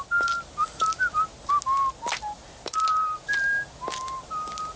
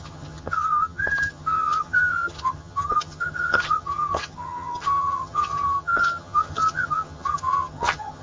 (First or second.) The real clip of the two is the first